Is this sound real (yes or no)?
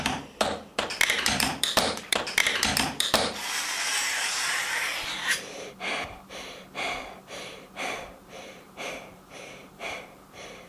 no